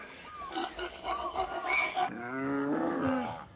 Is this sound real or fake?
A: fake